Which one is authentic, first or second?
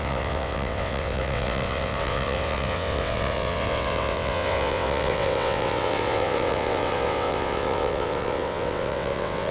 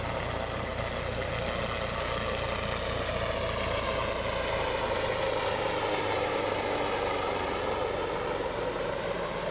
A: second